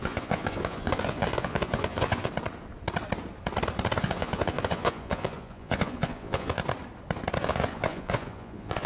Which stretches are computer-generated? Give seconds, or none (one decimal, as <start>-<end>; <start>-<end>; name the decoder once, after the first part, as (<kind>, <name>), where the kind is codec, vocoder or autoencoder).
0.0-2.3 (vocoder, Vocos); 4.0-6.6; 7.4-8.9